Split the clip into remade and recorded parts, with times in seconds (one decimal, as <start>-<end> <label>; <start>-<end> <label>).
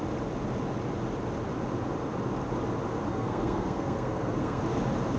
0.0-3.1 recorded; 3.1-4.6 remade; 4.6-5.2 recorded